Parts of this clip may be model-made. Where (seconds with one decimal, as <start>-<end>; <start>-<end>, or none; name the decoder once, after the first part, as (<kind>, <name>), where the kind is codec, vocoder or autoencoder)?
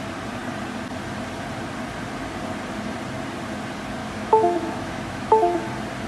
4.0-5.6 (autoencoder, DAC-VAE)